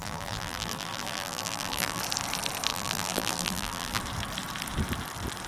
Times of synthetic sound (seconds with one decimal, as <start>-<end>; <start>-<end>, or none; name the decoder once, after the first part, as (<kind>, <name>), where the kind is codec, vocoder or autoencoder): 0.0-2.0 (vocoder, BigVGAN v2); 2.7-4.0